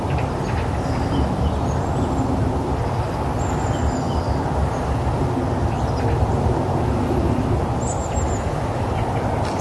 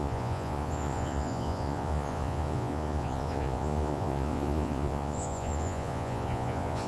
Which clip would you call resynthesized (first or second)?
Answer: second